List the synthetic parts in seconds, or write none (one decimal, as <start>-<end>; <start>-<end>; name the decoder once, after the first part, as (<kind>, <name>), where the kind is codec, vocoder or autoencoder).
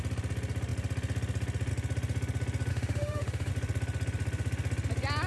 2.7-3.5 (autoencoder, DAC-VAE)